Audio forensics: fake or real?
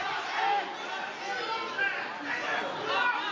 real